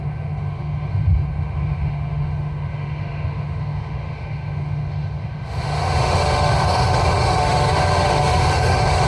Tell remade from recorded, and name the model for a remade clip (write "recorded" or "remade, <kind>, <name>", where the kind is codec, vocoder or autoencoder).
remade, autoencoder, DAC-VAE